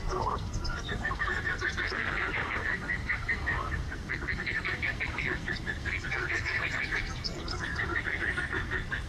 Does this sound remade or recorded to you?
remade